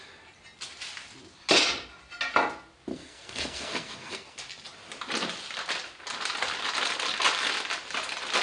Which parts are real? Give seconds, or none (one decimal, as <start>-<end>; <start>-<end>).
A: 0.0-2.9; 4.4-8.4